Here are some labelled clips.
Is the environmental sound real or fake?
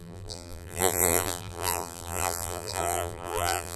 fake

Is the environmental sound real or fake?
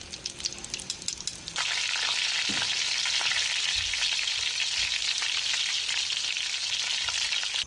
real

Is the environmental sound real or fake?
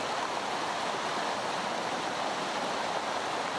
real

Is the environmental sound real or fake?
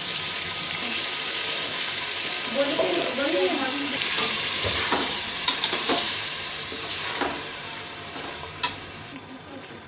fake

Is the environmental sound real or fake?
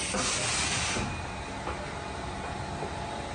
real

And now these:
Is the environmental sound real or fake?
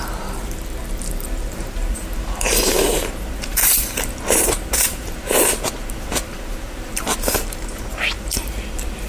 fake